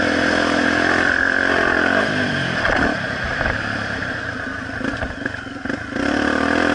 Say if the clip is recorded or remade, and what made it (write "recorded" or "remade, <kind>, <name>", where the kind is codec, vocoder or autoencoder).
remade, vocoder, BigVGAN v2